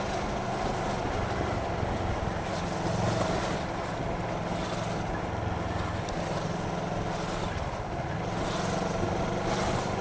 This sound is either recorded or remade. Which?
recorded